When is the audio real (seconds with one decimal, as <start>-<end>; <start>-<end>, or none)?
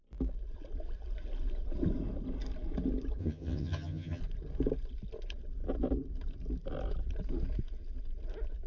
0.0-3.2; 4.2-8.7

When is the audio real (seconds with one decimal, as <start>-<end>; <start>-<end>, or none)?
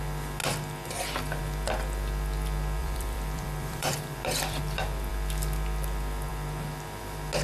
0.0-2.8; 4.6-7.4